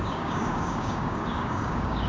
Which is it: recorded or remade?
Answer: remade